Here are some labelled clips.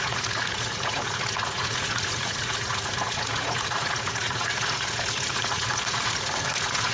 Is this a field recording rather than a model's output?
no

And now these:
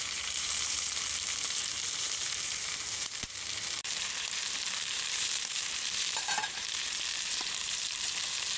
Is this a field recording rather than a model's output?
no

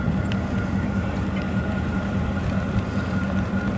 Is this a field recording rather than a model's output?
yes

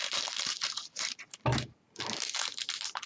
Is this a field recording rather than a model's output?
yes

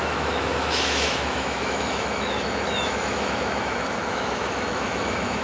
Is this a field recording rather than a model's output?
no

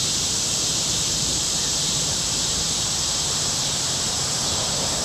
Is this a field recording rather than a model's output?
no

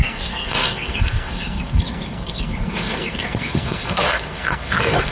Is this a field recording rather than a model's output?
no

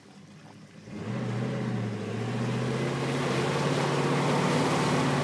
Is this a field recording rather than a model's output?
yes